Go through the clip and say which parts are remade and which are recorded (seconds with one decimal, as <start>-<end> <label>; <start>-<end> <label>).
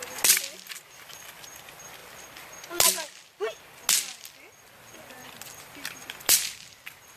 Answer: 0.0-7.2 recorded